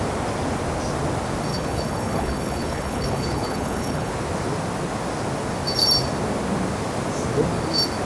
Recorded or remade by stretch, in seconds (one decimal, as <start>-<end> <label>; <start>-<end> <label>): 0.0-1.5 recorded; 1.5-4.1 remade; 4.1-8.0 recorded